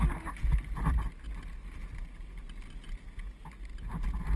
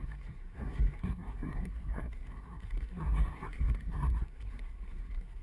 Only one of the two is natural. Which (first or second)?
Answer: first